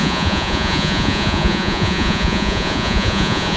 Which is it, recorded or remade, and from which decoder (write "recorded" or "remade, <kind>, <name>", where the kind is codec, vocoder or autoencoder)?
remade, vocoder, Vocos